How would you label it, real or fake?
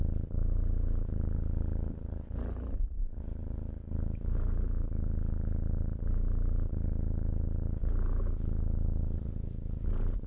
fake